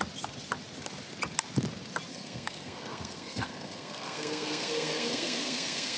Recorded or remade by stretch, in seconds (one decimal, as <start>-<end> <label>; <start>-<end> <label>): 0.0-2.1 recorded; 2.1-6.0 remade